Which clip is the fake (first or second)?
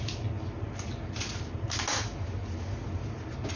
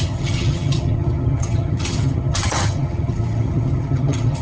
second